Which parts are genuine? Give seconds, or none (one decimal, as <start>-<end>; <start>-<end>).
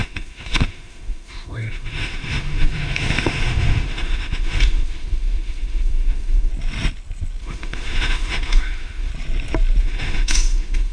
6.5-7.4; 9.1-9.8